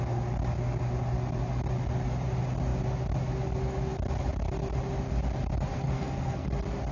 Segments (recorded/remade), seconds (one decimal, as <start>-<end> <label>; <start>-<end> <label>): 0.0-5.7 recorded; 5.7-6.5 remade; 6.5-6.9 recorded